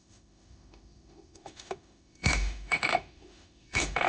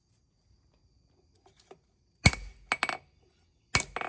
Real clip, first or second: second